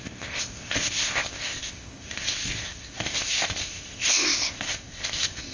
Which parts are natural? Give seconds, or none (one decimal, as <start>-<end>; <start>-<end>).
none